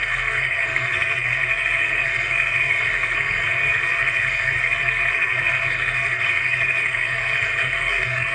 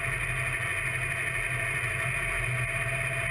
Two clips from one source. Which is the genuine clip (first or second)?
second